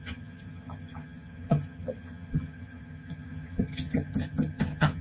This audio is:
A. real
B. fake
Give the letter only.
B